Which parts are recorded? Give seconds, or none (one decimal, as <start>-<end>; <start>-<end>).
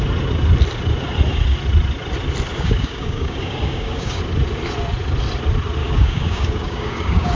0.0-2.5; 4.2-5.8